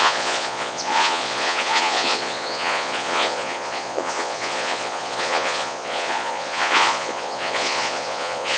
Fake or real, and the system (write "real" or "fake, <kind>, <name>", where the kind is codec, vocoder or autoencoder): fake, vocoder, Vocos